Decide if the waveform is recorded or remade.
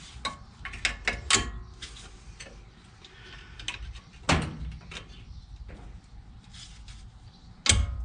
recorded